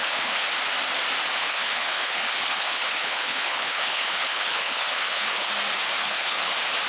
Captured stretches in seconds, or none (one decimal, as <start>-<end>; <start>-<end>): 0.5-1.4; 5.5-6.0; 6.5-6.9